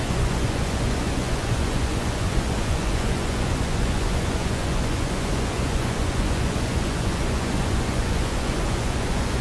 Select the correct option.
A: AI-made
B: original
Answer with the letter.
A